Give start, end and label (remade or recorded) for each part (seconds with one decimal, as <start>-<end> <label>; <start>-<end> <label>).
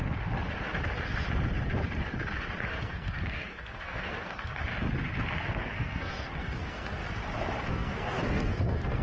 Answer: 0.0-2.6 recorded; 2.6-4.7 remade; 4.7-5.4 recorded; 5.4-7.0 remade; 7.0-7.7 recorded; 7.7-9.0 remade